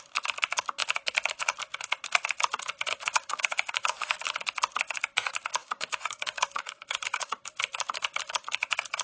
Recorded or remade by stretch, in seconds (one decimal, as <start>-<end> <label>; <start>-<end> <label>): 0.0-2.9 recorded; 2.9-4.1 remade; 4.1-5.6 recorded; 5.6-7.4 remade; 7.4-9.0 recorded